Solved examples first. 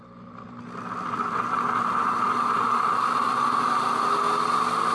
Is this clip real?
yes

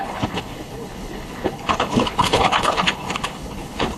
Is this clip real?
no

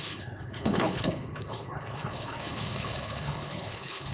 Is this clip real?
no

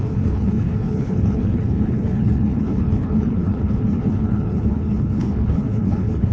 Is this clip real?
no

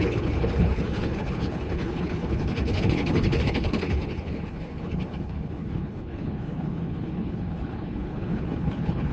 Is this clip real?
no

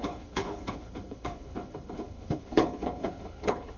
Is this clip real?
no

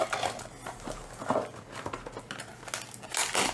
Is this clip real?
yes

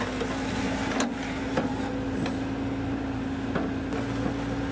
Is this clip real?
yes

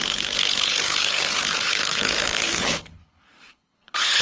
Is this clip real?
no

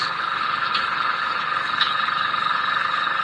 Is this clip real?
no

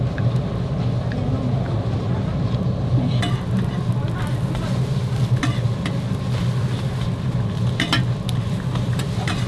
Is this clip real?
yes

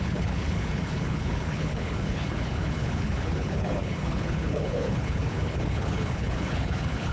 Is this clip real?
no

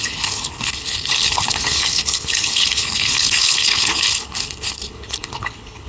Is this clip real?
no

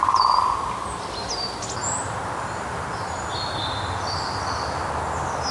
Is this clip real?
yes